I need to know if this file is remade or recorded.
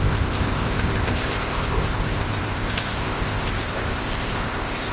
remade